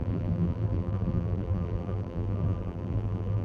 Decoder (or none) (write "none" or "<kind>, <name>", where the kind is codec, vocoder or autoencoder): vocoder, BigVGAN v2